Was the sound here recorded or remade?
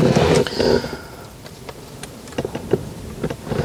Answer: recorded